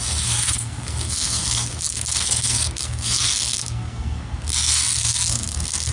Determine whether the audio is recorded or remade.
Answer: remade